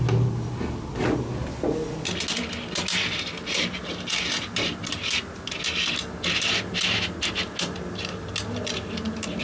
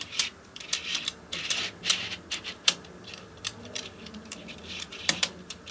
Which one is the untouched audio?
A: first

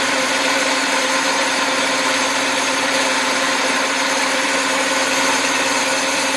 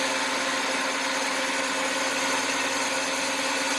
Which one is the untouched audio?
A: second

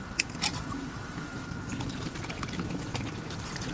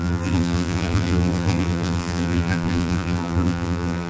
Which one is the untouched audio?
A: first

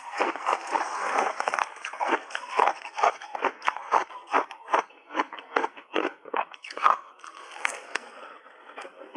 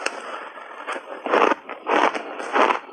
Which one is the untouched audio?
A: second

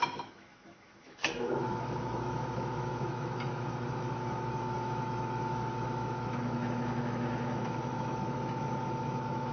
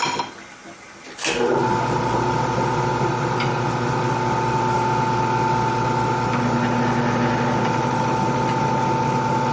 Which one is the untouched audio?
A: second